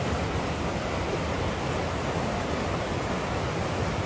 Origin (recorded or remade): recorded